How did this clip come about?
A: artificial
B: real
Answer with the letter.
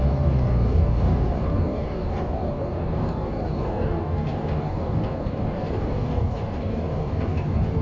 A